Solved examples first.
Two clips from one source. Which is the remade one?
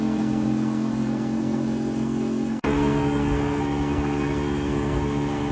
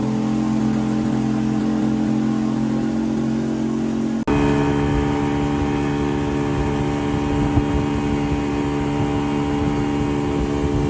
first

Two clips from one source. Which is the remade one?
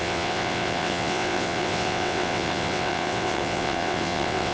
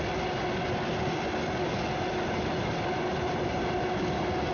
first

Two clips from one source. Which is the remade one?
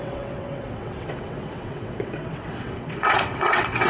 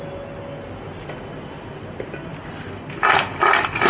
first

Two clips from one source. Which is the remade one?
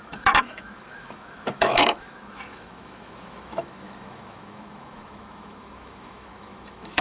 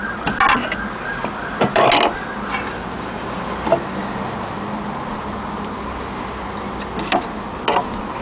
first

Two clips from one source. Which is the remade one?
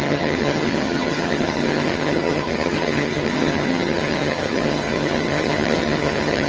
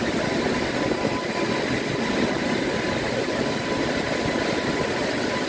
first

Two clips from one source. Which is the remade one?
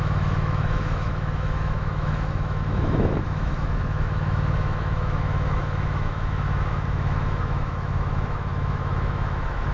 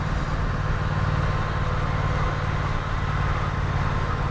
first